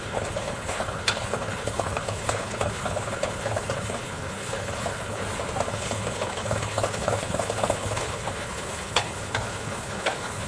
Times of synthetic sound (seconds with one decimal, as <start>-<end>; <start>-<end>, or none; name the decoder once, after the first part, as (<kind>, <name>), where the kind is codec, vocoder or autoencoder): 0.0-5.2 (codec, HILCodec); 5.7-10.5